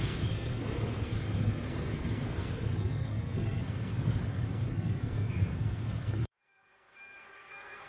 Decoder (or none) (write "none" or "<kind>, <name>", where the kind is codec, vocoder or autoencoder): codec, SNAC